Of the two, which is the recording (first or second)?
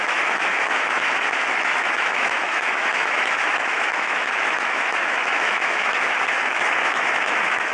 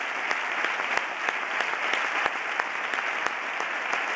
second